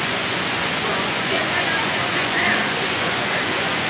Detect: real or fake fake